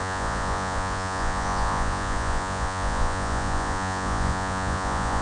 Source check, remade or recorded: remade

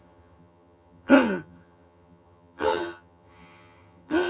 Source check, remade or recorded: remade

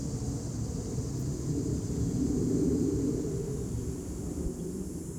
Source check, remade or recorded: recorded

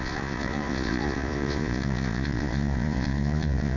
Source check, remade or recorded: remade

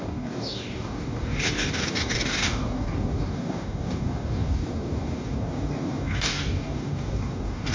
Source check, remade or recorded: remade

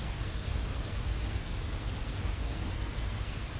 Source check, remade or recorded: remade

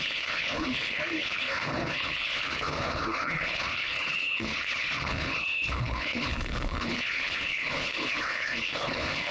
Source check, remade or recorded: remade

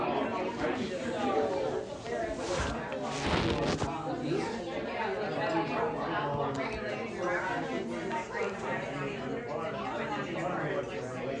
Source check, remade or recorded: recorded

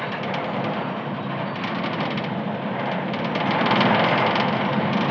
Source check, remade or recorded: recorded